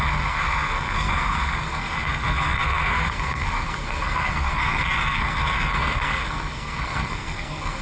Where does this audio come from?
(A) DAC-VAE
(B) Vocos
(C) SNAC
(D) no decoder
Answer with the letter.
C